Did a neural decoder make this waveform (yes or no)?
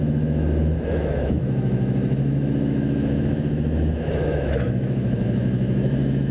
yes